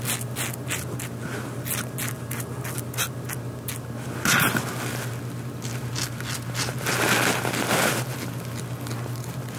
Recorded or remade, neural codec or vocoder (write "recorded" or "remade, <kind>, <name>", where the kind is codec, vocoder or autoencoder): recorded